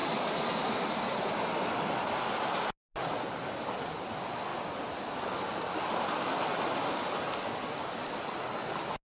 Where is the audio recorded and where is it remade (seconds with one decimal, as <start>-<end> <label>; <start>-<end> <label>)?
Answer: 0.0-4.5 recorded; 4.5-5.2 remade; 5.2-9.1 recorded